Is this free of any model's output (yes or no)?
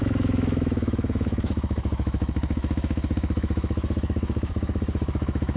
no